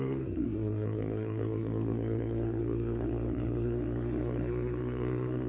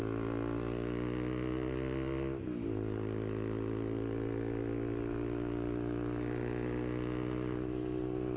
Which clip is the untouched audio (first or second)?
second